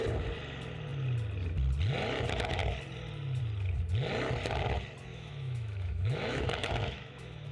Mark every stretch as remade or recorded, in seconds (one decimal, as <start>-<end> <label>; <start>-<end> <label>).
0.0-5.1 recorded; 5.1-7.5 remade